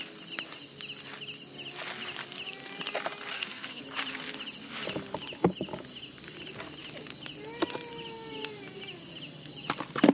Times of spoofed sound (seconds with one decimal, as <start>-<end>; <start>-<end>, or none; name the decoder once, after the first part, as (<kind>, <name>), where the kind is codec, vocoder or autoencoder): 3.3-3.8 (codec, SNAC)